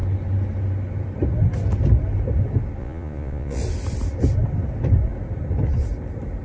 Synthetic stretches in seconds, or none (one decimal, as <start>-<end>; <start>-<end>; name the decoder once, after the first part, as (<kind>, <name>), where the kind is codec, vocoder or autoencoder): 2.8-3.6 (vocoder, Vocos)